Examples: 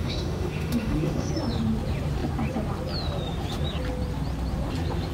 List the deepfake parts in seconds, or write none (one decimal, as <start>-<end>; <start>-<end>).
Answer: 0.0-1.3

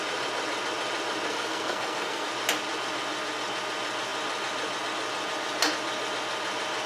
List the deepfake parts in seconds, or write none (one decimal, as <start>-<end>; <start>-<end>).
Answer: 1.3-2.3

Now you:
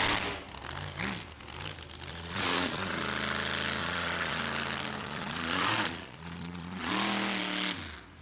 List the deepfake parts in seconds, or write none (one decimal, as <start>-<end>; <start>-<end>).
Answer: 2.1-3.0; 3.8-4.4; 5.0-6.9

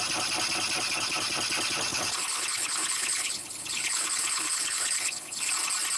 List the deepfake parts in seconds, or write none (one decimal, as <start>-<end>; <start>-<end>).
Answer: 1.9-5.5

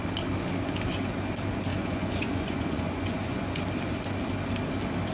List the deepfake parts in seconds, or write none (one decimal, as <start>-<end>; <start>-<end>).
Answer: 1.7-3.6